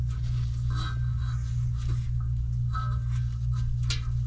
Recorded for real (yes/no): yes